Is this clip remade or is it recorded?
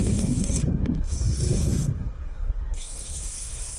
remade